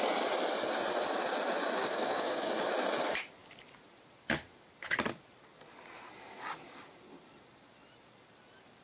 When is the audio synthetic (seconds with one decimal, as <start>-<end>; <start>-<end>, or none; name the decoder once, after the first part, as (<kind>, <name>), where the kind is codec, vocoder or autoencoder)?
1.8-2.5 (codec, DAC)